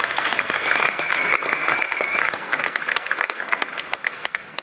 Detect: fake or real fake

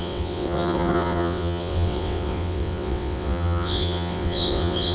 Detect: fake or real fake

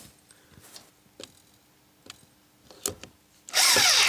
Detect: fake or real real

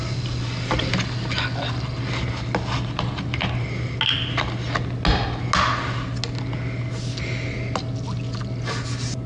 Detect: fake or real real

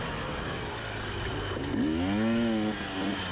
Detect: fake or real real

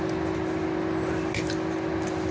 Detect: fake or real real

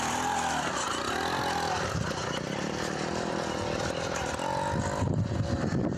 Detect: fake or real real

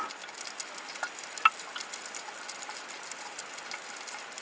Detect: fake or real real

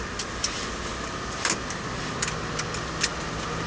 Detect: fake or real real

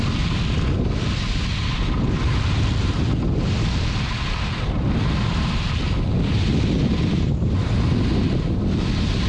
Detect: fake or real real